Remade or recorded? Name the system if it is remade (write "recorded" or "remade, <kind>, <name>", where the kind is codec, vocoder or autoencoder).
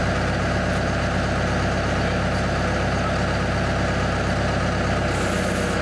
recorded